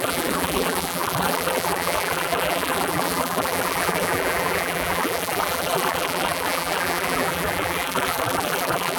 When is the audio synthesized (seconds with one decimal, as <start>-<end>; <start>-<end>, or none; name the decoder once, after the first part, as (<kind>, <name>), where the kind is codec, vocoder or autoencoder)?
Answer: 0.0-9.0 (vocoder, BigVGAN v2)